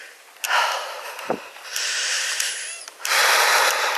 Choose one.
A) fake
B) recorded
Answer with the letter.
B